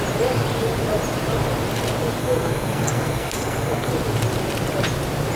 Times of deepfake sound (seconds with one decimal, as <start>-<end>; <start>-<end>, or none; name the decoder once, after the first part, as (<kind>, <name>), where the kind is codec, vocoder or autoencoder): 2.2-3.9 (codec, SNAC)